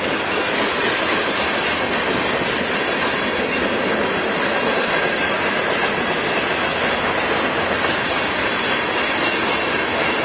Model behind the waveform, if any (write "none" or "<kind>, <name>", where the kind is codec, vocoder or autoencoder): none